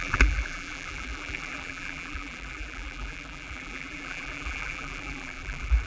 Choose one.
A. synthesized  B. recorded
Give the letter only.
A